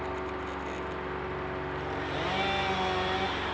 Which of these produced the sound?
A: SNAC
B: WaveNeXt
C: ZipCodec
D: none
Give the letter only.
D